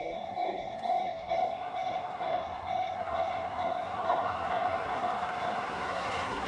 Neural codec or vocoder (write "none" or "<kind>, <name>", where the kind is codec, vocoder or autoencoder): codec, SNAC